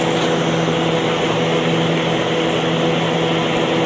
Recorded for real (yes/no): yes